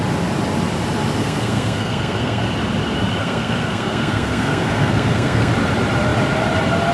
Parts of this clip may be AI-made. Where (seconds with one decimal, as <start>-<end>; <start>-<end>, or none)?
1.2-2.4; 3.2-5.5